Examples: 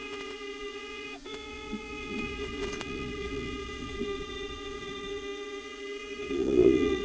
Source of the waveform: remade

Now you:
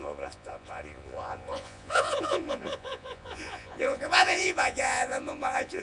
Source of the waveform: remade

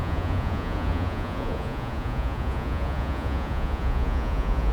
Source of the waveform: remade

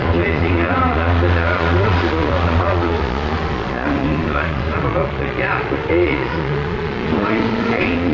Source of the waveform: remade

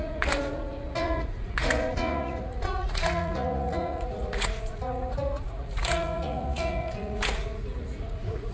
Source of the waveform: remade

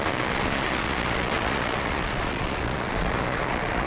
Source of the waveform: remade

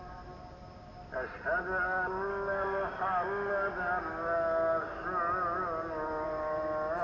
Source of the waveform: recorded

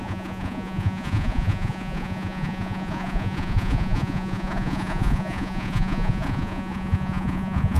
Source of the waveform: remade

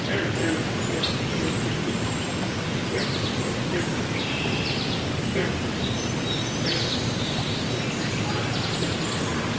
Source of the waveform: recorded